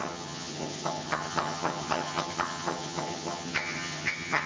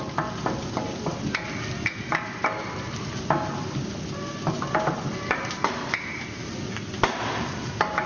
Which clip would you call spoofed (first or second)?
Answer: first